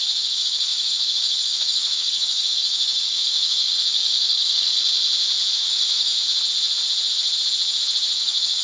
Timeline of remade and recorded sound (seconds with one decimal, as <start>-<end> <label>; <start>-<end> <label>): 0.0-4.7 remade; 4.7-5.5 recorded; 5.5-6.1 remade; 6.1-8.2 recorded; 8.2-8.6 remade